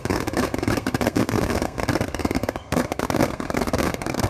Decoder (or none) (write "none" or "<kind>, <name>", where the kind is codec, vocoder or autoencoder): codec, SNAC